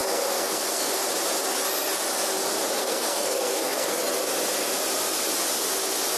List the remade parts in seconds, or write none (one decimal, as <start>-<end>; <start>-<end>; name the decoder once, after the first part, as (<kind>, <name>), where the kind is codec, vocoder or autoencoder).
0.0-0.9 (codec, SNAC); 2.8-4.0